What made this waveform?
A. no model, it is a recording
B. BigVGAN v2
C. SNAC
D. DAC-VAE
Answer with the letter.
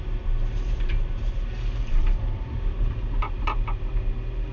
B